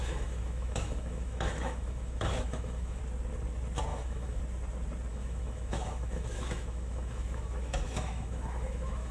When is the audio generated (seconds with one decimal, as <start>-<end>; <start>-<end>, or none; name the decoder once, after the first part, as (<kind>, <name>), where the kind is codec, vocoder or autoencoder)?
0.0-3.0 (autoencoder, DAC-VAE); 3.9-4.4; 5.1-9.1